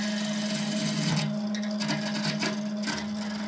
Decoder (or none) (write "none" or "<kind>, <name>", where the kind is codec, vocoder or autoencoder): none